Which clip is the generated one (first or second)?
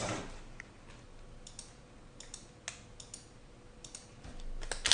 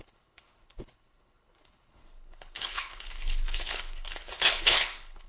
second